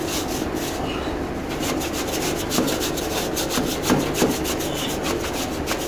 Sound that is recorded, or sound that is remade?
recorded